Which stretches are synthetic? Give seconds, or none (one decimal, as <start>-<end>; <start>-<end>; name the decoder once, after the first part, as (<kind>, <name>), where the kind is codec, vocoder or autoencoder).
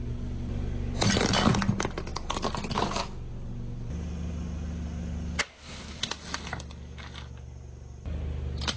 5.5-6.1 (codec, SNAC)